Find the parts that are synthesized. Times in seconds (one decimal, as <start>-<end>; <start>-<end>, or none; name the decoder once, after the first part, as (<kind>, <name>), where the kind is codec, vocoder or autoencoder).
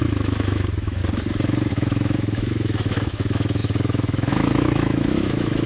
0.0-1.0 (autoencoder, DAC-VAE); 1.7-5.7